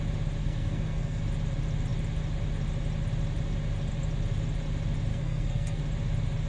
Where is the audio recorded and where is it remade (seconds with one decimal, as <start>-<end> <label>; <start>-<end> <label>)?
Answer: 0.0-0.4 recorded; 0.4-1.2 remade; 1.2-5.1 recorded; 5.1-5.8 remade; 5.8-6.5 recorded